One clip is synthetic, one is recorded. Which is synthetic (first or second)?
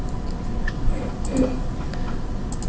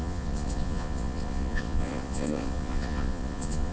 second